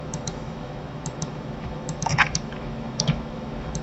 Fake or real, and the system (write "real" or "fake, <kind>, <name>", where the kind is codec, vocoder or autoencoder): fake, autoencoder, DAC-VAE